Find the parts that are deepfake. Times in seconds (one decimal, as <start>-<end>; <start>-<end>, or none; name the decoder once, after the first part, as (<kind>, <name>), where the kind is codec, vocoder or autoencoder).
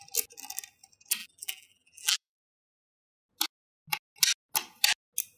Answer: 1.2-2.6 (vocoder, BigVGAN v2)